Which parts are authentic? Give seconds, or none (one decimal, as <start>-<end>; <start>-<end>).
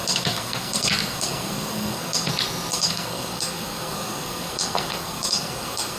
2.3-2.7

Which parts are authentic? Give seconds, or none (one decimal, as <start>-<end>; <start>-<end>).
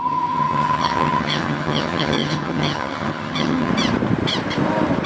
3.7-5.1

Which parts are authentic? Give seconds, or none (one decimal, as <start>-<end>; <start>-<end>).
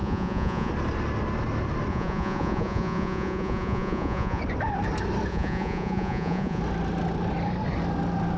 0.7-1.9; 4.4-5.3; 6.6-8.4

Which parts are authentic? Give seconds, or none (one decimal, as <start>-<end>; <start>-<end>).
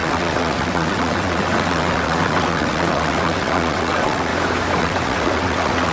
4.3-4.8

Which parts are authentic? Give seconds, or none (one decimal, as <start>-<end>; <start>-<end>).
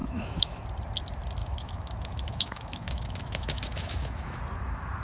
0.6-1.4; 4.4-5.0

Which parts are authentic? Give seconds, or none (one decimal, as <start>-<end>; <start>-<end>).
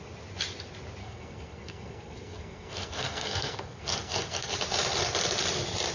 0.0-1.0; 4.5-5.9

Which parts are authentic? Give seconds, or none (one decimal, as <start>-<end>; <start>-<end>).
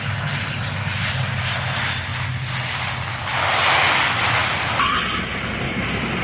0.0-6.2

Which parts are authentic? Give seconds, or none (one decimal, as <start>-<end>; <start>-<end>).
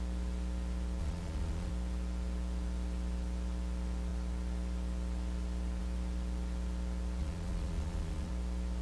0.0-1.0; 1.7-7.2; 8.3-8.8